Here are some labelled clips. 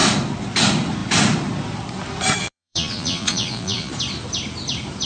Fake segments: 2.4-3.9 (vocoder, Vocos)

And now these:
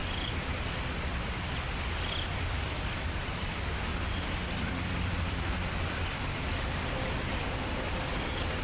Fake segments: none

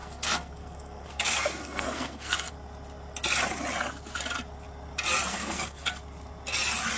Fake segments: 0.0-2.5 (codec, SNAC); 5.3-5.9

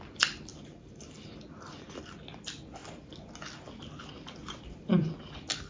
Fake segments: 4.4-5.1 (vocoder, BigVGAN v2)

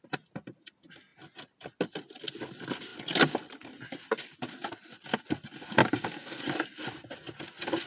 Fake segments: 5.8-6.4 (codec, DAC)

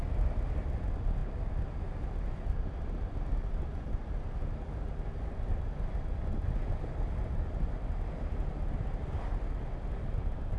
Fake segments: none